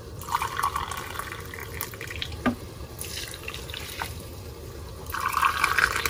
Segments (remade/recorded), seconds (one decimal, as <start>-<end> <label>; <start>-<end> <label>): 0.0-4.3 remade; 4.3-6.1 recorded